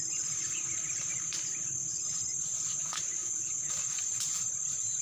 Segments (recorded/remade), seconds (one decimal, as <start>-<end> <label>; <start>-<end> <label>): 0.0-3.2 recorded; 3.2-4.0 remade; 4.0-5.0 recorded